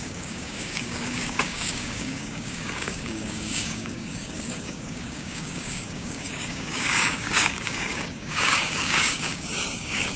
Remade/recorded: remade